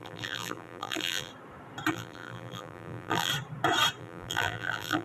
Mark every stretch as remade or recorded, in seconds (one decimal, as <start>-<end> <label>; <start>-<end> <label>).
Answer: 0.0-1.3 remade; 1.3-1.9 recorded; 1.9-3.3 remade; 3.3-4.0 recorded; 4.0-5.0 remade